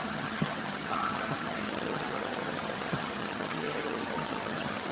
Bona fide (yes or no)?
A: no